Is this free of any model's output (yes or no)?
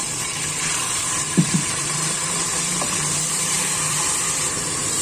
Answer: no